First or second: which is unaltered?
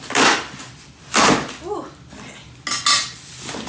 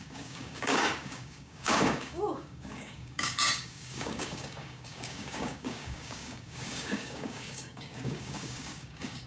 first